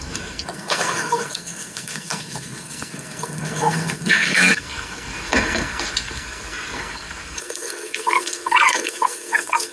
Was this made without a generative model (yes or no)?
no